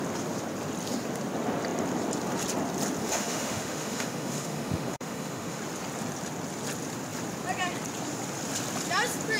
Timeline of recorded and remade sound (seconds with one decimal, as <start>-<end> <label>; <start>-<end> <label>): 0.0-3.0 recorded; 3.0-5.6 remade; 5.6-9.4 recorded